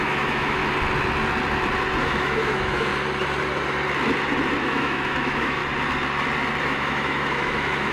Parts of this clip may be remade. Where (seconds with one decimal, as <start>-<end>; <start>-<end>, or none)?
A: 0.0-0.6; 2.0-2.9; 4.6-5.6; 6.6-7.9